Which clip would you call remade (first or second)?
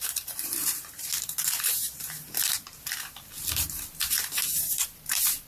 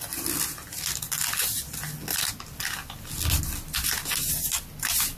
first